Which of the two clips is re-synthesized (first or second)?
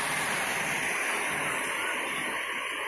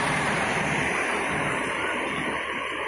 second